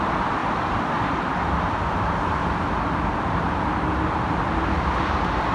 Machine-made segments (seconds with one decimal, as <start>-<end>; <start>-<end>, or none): 0.4-2.6